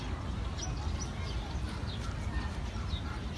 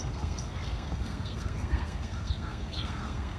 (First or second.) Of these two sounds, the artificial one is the second